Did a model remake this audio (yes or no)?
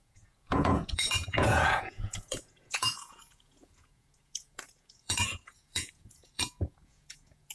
yes